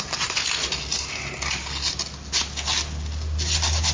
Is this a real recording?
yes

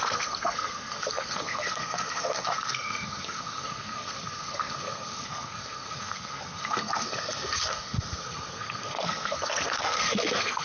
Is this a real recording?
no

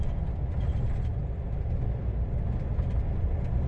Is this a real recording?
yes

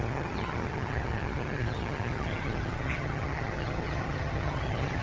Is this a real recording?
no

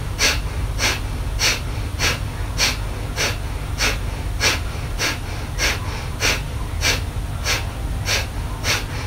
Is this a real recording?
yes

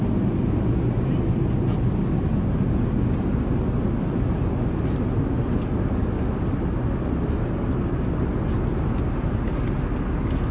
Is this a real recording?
yes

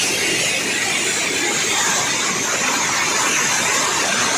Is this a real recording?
yes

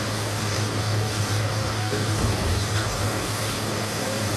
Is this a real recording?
no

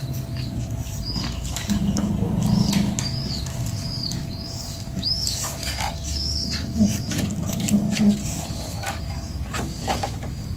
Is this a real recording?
no